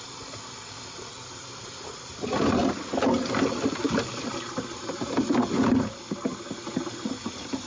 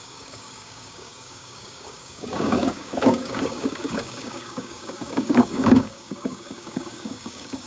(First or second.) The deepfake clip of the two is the second